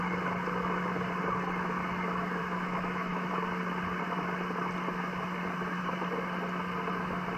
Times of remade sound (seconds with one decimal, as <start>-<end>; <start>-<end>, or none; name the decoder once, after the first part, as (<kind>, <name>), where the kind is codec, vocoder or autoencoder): 2.4-3.3 (autoencoder, DAC-VAE)